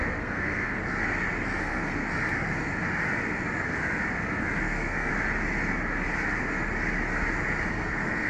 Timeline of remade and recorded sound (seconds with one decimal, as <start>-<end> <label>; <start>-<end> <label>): 0.0-0.8 remade; 0.8-1.6 recorded; 1.6-2.0 remade; 2.0-4.6 recorded; 4.6-5.1 remade; 5.1-7.7 recorded; 7.7-8.3 remade